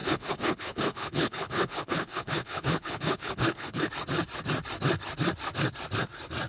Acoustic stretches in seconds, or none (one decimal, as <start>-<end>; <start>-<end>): 3.9-6.5